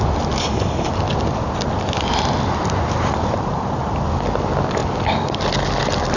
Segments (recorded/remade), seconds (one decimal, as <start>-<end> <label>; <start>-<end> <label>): 0.0-0.4 recorded; 0.4-0.9 remade; 0.9-6.2 recorded